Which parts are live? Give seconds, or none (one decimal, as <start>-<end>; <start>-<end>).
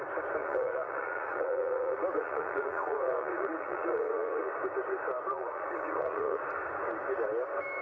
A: 0.0-0.4; 4.5-5.3; 6.4-7.8